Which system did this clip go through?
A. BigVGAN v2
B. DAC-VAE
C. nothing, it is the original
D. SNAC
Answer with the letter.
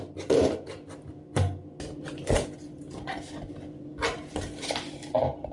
C